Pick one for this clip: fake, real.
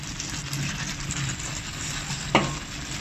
real